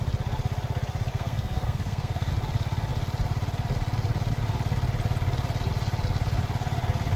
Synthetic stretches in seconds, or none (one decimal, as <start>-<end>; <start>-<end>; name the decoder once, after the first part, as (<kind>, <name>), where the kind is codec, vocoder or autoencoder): 1.1-2.3 (codec, SNAC)